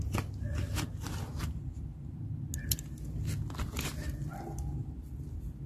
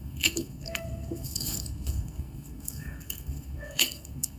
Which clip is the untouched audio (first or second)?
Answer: first